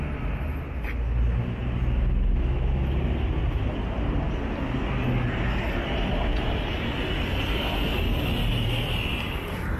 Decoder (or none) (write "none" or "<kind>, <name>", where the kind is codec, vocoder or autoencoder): none